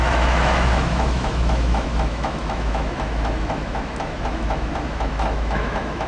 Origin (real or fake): fake